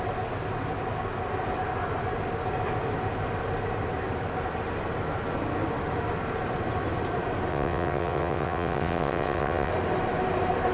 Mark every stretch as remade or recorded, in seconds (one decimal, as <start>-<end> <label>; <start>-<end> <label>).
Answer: 0.0-7.5 recorded; 7.5-9.7 remade; 9.7-10.7 recorded